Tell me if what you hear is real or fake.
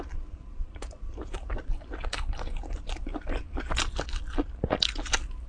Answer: real